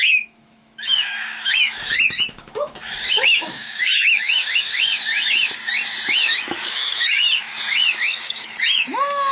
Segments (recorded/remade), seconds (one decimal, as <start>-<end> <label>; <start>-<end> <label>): 0.0-4.9 remade; 4.9-6.2 recorded; 6.2-7.5 remade; 7.5-8.0 recorded; 8.0-9.3 remade